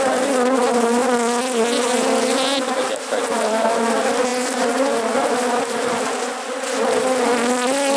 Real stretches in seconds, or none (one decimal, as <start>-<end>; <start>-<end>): 0.0-8.0